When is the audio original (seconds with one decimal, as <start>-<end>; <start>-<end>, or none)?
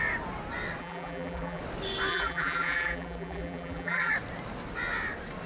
0.0-0.8; 1.6-2.1; 4.1-5.5